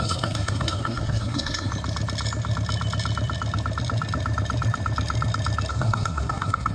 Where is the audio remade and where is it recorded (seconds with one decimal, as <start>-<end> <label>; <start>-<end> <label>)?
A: 0.0-1.7 remade; 1.7-5.7 recorded; 5.7-6.7 remade